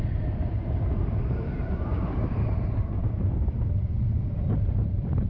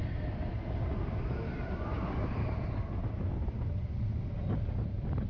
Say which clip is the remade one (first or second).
first